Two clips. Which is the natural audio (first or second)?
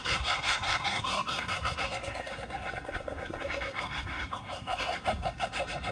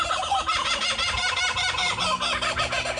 second